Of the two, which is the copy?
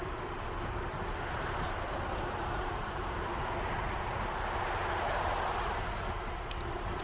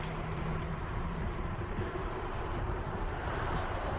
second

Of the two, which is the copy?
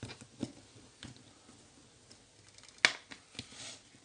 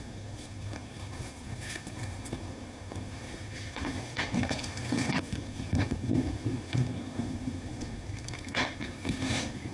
second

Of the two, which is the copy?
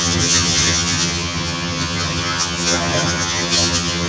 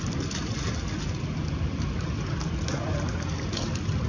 first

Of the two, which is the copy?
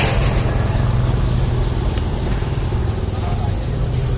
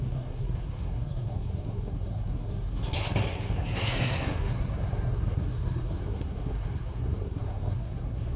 second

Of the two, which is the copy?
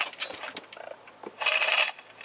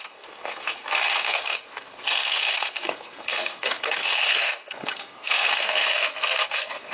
second